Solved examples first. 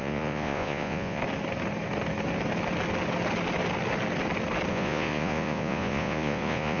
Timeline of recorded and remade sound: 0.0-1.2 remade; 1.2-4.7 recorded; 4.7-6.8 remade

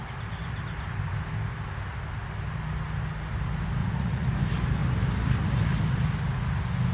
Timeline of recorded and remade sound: 0.0-3.8 recorded; 3.8-4.3 remade; 4.3-6.9 recorded

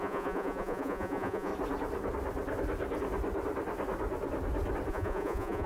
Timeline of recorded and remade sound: 0.0-1.5 remade; 1.5-4.9 recorded; 4.9-5.7 remade